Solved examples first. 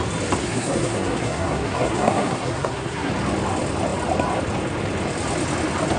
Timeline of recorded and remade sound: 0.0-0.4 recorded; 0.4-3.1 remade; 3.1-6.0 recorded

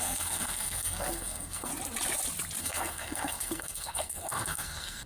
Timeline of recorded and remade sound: 0.0-1.7 remade; 1.7-2.6 recorded; 2.6-5.1 remade

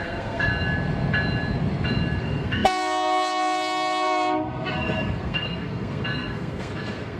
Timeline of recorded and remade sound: 0.0-0.5 remade; 0.5-2.2 recorded; 2.2-7.2 remade

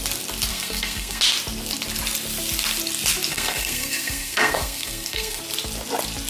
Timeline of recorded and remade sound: 0.0-0.5 recorded; 0.5-1.2 remade; 1.2-3.3 recorded; 3.3-5.4 remade; 5.4-6.3 recorded

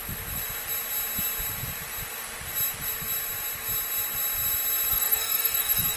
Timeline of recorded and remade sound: 0.0-4.9 recorded; 4.9-6.0 remade

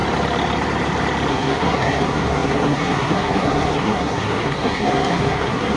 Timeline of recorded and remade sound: 0.0-1.3 recorded; 1.3-5.8 remade